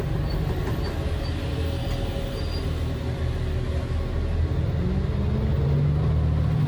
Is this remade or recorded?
recorded